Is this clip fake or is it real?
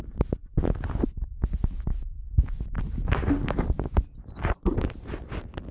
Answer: real